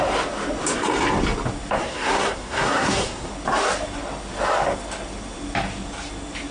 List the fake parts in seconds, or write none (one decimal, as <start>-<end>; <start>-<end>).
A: 1.8-3.3